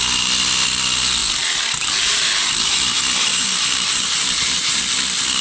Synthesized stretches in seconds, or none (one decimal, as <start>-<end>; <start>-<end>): 3.3-4.8

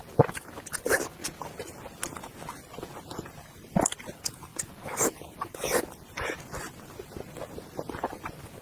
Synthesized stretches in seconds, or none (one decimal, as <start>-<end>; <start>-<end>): none

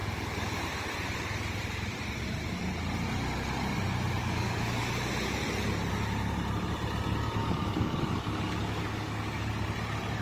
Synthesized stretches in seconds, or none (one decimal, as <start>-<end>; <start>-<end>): 4.2-4.8; 7.4-9.5

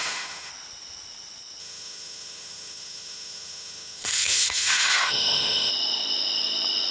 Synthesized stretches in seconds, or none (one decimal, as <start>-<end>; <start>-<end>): 0.0-0.5; 1.6-5.7